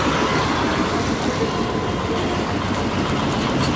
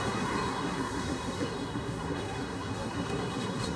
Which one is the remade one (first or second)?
second